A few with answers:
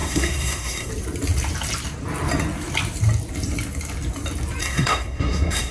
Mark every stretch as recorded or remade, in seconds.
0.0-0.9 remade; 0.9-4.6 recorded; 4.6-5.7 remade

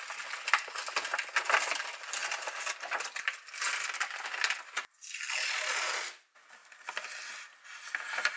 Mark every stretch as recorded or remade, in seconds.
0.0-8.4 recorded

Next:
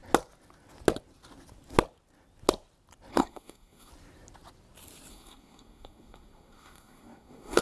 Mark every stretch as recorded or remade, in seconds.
0.0-3.1 recorded; 3.1-3.9 remade; 3.9-5.1 recorded; 5.1-7.6 remade